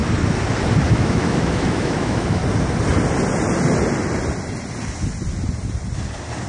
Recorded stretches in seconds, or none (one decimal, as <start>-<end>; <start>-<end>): 0.0-0.9; 2.4-6.5